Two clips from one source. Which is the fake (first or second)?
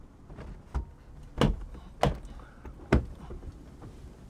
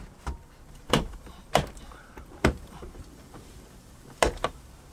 second